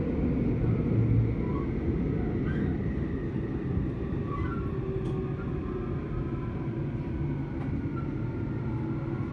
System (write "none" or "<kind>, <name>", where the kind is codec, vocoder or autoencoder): none